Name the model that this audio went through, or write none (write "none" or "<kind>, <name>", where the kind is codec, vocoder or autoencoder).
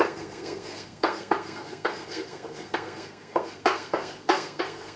codec, SNAC